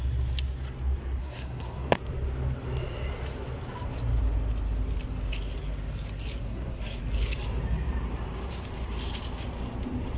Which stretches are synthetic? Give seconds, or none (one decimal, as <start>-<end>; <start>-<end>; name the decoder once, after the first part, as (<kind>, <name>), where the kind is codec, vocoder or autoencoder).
1.2-1.9 (codec, SNAC); 6.4-7.0